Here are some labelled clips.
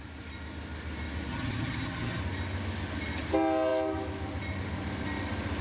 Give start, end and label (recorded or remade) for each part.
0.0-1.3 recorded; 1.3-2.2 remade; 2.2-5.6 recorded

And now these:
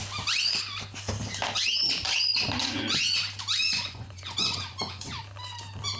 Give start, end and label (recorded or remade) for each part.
0.0-2.6 recorded; 2.6-3.2 remade; 3.2-3.6 recorded; 3.6-5.2 remade; 5.2-6.0 recorded

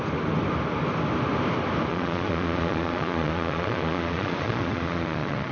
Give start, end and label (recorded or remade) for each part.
0.0-1.9 recorded; 1.9-5.5 remade

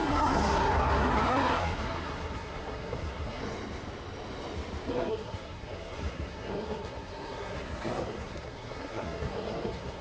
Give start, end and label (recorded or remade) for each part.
0.0-3.4 remade; 3.4-4.9 recorded; 4.9-10.0 remade

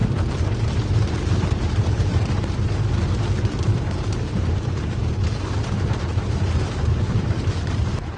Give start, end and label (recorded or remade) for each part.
0.0-2.3 remade; 2.3-3.0 recorded; 3.0-8.2 remade

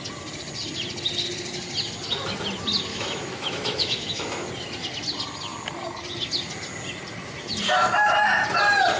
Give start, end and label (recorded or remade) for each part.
0.0-2.9 recorded; 2.9-4.5 remade; 4.5-9.0 recorded

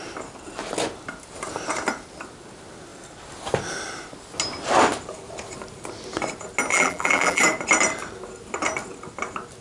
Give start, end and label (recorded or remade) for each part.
0.0-6.7 recorded; 6.7-7.4 remade; 7.4-9.6 recorded

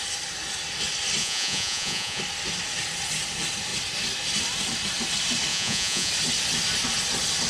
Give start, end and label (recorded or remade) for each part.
0.0-1.2 recorded; 1.2-2.2 remade; 2.2-5.5 recorded; 5.5-6.1 remade; 6.1-7.5 recorded